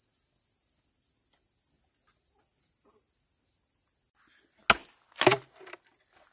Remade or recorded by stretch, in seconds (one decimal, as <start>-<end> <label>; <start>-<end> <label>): 0.0-4.8 recorded; 4.8-5.4 remade; 5.4-6.3 recorded